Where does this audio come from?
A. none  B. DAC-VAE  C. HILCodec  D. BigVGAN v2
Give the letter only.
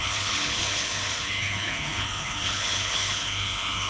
C